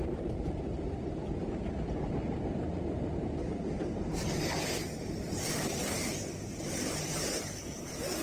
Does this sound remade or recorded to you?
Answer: remade